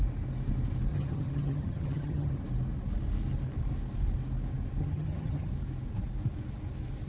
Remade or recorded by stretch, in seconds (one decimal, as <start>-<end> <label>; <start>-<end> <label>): 0.0-0.9 recorded; 0.9-2.4 remade; 2.4-4.8 recorded; 4.8-5.5 remade; 5.5-7.1 recorded